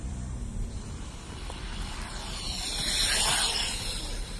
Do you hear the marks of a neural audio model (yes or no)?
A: yes